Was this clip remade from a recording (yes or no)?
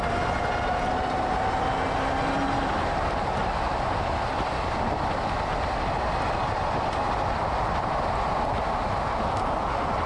no